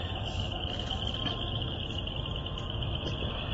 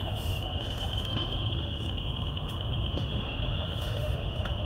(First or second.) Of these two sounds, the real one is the first